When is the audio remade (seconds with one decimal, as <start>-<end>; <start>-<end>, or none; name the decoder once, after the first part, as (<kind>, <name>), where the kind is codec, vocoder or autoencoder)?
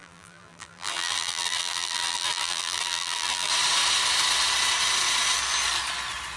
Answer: 0.0-3.5 (vocoder, BigVGAN v2)